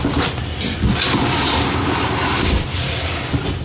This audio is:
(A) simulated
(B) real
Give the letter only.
B